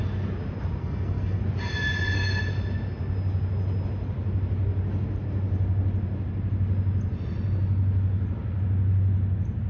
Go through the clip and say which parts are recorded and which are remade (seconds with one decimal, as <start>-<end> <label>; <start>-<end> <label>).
0.0-0.8 recorded; 0.8-1.4 remade; 1.4-9.7 recorded